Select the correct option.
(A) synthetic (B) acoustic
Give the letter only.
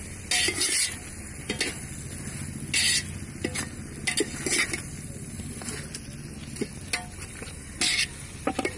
B